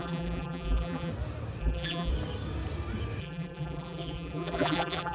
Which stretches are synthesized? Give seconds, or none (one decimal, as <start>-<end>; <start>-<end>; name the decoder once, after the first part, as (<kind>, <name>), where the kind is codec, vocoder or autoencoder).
0.0-1.1 (vocoder, BigVGAN v2); 1.6-2.1; 3.2-5.1